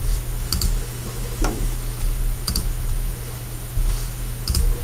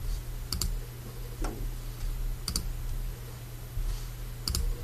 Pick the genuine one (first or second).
second